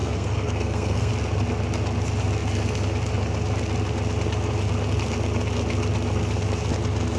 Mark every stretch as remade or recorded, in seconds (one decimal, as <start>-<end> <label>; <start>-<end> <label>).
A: 0.0-1.1 remade; 1.1-7.2 recorded